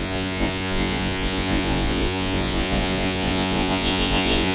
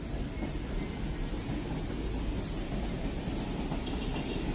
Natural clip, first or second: second